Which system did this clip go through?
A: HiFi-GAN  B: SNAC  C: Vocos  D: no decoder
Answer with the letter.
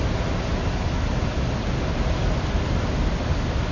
D